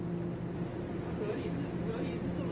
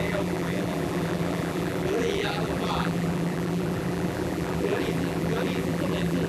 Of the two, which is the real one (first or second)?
first